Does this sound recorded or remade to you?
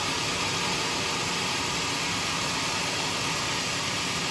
recorded